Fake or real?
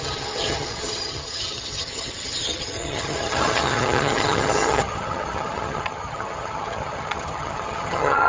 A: fake